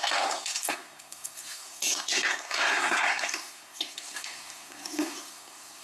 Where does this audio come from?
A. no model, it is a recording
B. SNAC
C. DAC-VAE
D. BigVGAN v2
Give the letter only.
B